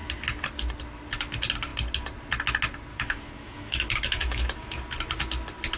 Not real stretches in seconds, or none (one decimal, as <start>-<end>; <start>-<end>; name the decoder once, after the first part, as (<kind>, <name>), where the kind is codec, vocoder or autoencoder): 2.9-4.8 (autoencoder, DAC-VAE)